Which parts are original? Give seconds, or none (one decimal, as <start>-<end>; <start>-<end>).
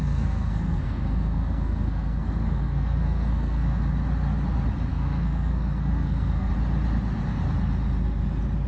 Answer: 3.8-4.9; 6.5-8.7